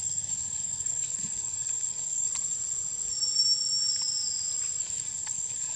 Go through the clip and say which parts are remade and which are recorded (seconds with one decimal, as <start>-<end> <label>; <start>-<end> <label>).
0.0-2.3 remade; 2.3-4.8 recorded; 4.8-5.8 remade